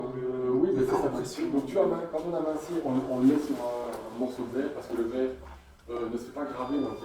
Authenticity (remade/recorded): recorded